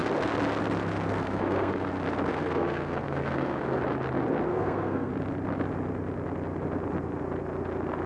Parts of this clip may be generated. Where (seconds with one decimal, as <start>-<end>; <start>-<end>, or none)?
1.1-1.9; 2.3-3.8; 4.5-5.1